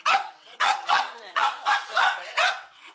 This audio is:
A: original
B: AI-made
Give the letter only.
B